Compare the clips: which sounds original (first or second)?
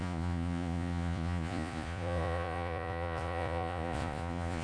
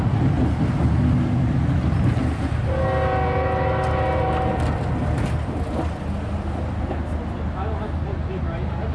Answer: second